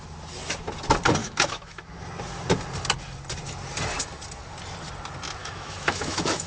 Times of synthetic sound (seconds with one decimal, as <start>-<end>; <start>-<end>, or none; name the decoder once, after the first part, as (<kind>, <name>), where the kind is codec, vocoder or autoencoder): 1.2-1.9 (autoencoder, DAC-VAE); 5.4-6.5